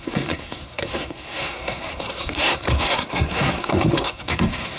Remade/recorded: remade